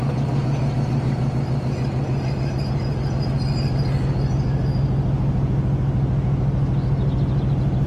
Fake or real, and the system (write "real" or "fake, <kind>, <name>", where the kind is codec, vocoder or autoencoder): real